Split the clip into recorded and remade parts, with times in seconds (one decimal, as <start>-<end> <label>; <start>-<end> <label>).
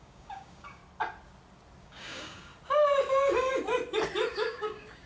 0.0-0.8 remade; 0.8-1.8 recorded; 1.8-2.5 remade; 2.5-4.3 recorded; 4.3-5.1 remade